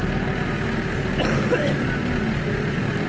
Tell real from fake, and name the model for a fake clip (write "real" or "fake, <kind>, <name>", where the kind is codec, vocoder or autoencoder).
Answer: real